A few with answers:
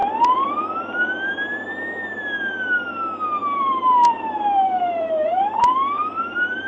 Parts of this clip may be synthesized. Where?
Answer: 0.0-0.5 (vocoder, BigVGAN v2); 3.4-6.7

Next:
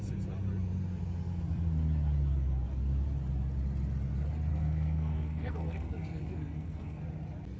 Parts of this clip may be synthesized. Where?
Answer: 4.5-7.0 (codec, SNAC)

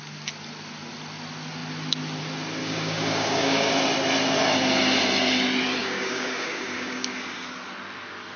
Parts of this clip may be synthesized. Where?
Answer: 2.6-3.7 (codec, DAC); 5.8-7.4

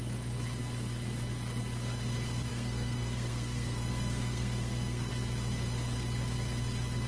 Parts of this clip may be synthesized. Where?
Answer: 2.5-5.1 (codec, SNAC)